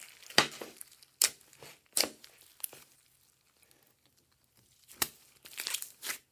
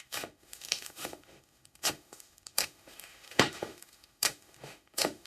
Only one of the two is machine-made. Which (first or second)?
second